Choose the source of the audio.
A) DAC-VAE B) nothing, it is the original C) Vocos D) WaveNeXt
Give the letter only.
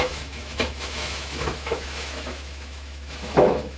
A